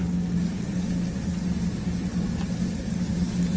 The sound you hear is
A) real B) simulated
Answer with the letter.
A